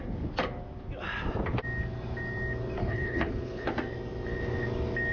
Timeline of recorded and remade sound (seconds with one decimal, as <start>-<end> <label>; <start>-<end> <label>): 0.0-2.8 recorded; 2.8-3.7 remade; 3.7-5.1 recorded